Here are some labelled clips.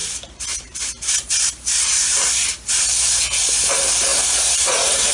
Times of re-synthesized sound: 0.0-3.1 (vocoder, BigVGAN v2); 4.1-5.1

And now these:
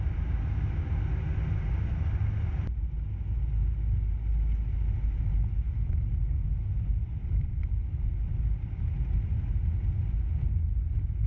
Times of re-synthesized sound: none

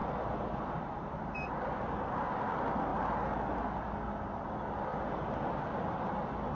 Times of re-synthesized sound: 0.0-2.9 (vocoder, BigVGAN v2); 3.6-4.9; 6.0-6.5